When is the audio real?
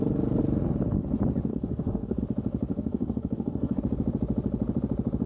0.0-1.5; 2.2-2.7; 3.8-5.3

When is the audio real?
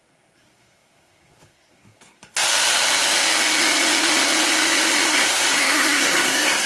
2.5-5.1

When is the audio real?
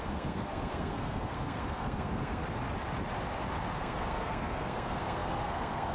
2.4-3.7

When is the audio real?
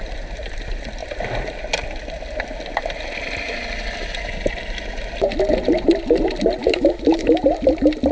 0.0-6.6; 7.4-8.1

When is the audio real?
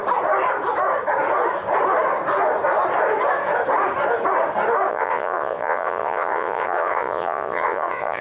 0.0-4.9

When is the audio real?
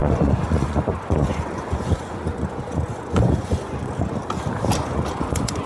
4.2-4.8